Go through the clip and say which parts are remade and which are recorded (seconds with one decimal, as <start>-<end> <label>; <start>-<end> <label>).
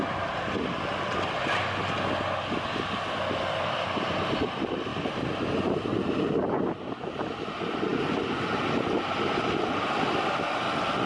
0.0-11.1 recorded